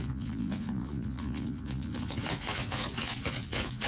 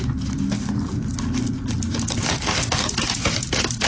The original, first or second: second